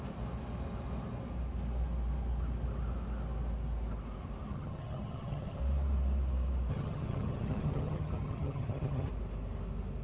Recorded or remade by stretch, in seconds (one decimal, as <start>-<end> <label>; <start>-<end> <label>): 0.0-4.5 recorded; 4.5-5.6 remade; 5.6-6.7 recorded; 6.7-9.1 remade; 9.1-10.0 recorded